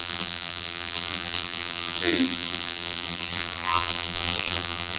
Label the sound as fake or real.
fake